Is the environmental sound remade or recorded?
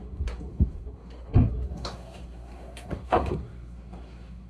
remade